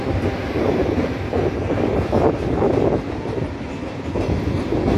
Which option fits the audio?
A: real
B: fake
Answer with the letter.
A